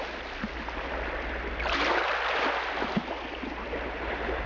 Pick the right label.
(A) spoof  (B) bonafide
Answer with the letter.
B